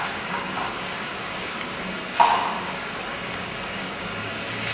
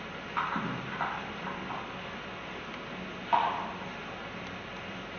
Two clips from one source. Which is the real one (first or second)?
second